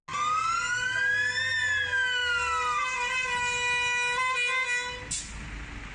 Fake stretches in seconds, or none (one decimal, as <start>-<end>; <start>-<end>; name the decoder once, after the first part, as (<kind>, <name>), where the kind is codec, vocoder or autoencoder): none